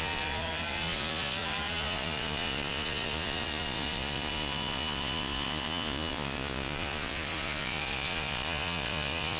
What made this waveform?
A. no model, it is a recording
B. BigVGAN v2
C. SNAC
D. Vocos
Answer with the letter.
D